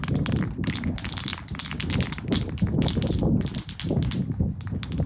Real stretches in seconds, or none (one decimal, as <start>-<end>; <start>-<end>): 0.0-5.1